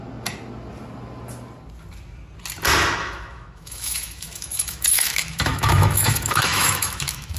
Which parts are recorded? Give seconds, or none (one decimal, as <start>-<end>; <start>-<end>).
0.0-3.0